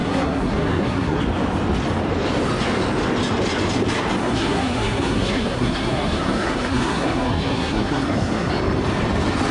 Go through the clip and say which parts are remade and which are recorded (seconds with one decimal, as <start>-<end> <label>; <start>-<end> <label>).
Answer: 0.0-1.2 remade; 1.2-4.2 recorded; 4.2-8.5 remade; 8.5-9.5 recorded